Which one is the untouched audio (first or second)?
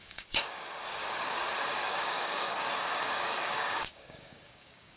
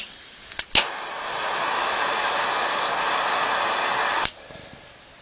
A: second